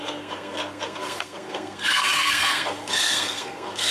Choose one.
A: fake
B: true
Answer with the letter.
A